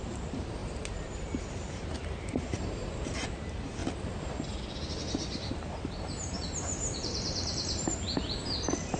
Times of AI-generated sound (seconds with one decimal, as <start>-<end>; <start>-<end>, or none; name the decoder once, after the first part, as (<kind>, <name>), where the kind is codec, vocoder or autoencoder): 0.0-3.8 (vocoder, BigVGAN v2); 5.5-9.0